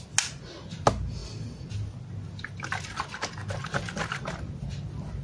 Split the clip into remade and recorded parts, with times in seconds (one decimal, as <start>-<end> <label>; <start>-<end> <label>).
0.0-5.2 recorded